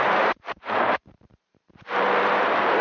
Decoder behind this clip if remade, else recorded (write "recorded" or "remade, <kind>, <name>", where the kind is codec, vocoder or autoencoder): remade, vocoder, BigVGAN v2